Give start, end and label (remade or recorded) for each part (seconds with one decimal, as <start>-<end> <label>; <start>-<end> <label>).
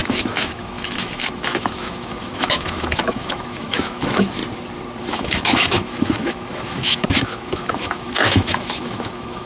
0.0-4.4 remade; 4.4-5.0 recorded; 5.0-9.5 remade